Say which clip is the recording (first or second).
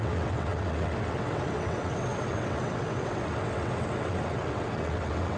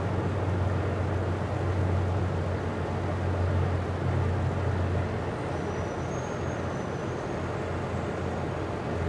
second